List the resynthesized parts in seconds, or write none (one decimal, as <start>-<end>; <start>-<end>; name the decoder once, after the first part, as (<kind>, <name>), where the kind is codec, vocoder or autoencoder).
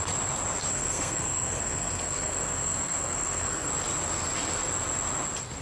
0.7-3.7 (codec, SNAC)